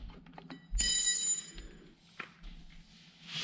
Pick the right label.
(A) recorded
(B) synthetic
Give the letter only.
A